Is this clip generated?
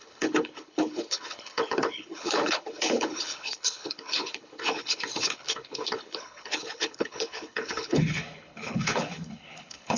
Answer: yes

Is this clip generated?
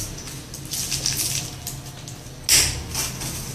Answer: no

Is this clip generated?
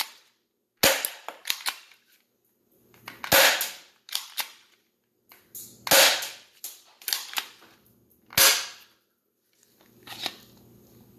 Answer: no